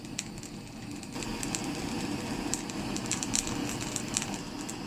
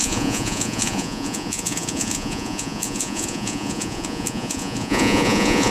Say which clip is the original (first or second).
first